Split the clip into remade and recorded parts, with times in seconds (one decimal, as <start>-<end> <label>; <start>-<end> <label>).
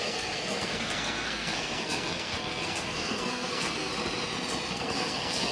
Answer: 0.0-3.9 remade; 3.9-4.7 recorded; 4.7-5.5 remade